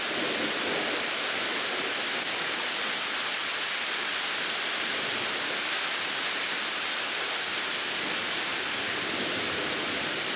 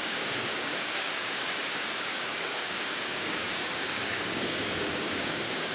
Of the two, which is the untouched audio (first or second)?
first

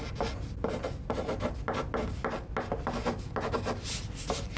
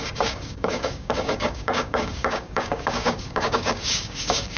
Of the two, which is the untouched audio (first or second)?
first